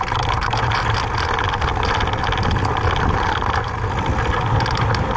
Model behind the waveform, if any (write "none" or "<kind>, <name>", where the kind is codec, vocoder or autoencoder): none